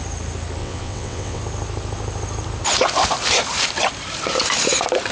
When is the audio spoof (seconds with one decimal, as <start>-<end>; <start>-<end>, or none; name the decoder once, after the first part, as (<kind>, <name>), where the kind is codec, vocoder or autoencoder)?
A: 0.6-1.4 (vocoder, WaveNeXt)